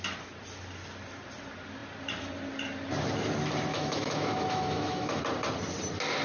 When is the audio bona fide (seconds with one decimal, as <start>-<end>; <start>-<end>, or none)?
0.0-3.7; 5.2-6.2